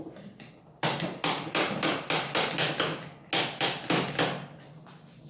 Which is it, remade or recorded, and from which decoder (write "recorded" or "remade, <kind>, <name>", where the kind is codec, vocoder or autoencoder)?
recorded